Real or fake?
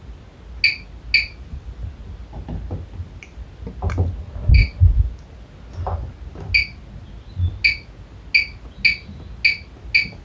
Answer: real